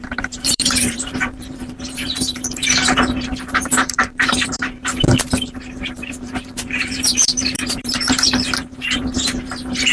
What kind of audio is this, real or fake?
fake